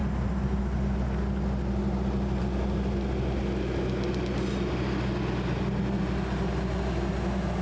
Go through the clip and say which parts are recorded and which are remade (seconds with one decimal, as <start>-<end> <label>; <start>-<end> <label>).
0.0-7.6 recorded